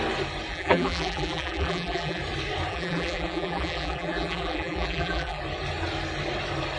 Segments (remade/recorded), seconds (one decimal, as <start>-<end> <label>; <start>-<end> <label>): 0.0-0.5 recorded; 0.5-2.2 remade; 2.2-2.7 recorded; 2.7-5.4 remade; 5.4-6.8 recorded